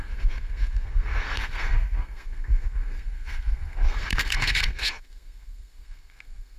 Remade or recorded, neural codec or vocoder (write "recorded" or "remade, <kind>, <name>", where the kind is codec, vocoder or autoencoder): remade, codec, SNAC